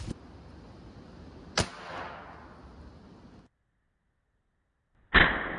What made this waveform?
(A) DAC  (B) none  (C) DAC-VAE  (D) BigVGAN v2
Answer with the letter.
B